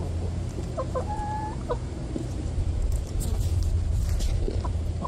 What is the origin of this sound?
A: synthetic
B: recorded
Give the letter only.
A